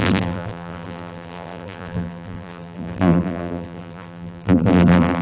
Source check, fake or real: fake